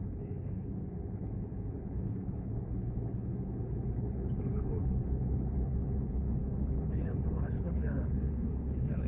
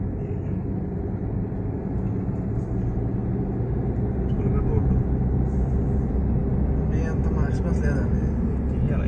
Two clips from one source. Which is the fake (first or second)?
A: first